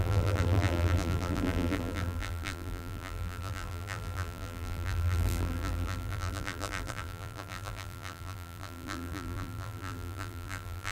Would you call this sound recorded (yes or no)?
no